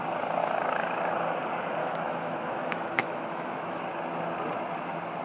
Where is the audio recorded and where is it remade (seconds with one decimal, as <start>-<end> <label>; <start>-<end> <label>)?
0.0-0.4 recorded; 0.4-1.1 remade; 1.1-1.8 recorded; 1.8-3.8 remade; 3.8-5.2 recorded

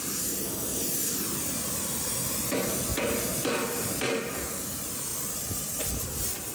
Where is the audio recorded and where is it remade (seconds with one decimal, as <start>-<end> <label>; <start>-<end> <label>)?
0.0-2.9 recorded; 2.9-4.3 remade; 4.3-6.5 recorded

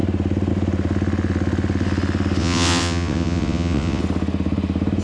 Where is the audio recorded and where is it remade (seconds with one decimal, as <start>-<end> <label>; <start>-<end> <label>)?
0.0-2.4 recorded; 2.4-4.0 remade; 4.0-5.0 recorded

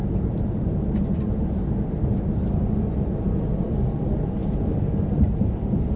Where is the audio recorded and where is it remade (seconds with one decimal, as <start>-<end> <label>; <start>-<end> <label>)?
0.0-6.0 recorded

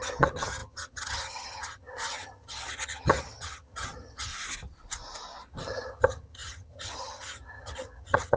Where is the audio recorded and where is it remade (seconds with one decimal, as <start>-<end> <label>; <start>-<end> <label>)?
0.0-4.3 remade; 4.3-5.5 recorded; 5.5-8.4 remade